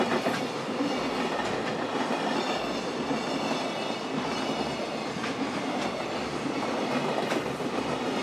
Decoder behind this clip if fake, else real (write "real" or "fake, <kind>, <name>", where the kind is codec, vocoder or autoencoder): real